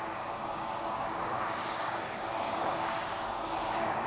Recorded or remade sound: remade